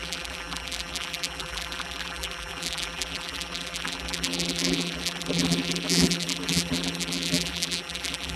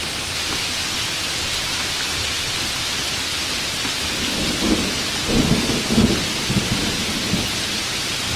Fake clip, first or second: first